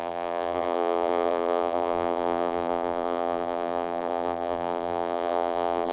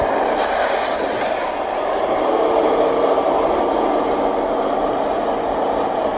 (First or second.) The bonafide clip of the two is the second